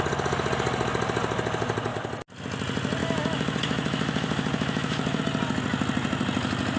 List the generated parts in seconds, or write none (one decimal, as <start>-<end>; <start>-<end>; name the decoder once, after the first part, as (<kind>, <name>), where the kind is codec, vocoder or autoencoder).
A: 3.0-5.2 (autoencoder, DAC-VAE)